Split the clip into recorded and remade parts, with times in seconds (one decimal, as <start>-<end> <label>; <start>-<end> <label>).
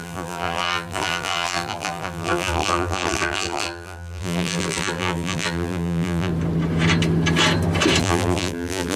0.0-6.3 remade; 6.3-8.0 recorded; 8.0-9.0 remade